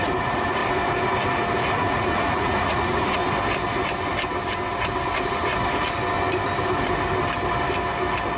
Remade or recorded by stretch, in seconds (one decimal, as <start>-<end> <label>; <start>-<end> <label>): 0.0-0.6 remade; 0.6-1.6 recorded; 1.6-3.2 remade; 3.2-8.4 recorded